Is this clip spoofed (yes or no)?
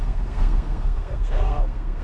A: yes